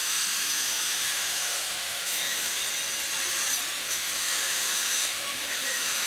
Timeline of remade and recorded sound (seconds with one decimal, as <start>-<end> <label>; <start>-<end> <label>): 0.0-2.6 remade; 2.6-3.8 recorded; 3.8-6.1 remade